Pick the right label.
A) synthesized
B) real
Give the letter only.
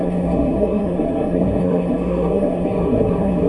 A